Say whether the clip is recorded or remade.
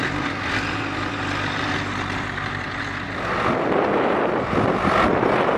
recorded